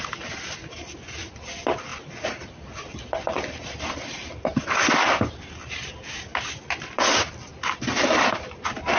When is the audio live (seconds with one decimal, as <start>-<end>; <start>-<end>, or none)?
0.0-9.0